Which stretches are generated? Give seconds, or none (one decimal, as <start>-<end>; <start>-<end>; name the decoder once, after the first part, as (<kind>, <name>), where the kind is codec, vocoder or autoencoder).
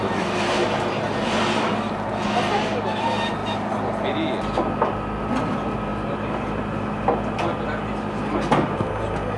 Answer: none